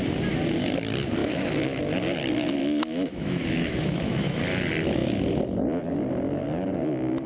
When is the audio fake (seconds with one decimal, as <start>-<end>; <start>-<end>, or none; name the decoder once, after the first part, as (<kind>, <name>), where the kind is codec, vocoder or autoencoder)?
1.2-1.8 (autoencoder, DAC-VAE); 2.6-4.4